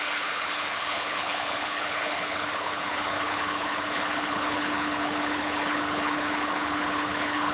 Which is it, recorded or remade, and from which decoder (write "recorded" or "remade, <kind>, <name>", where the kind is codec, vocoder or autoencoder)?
remade, codec, HILCodec